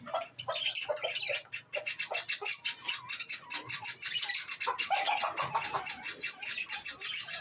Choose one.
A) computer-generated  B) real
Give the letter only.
B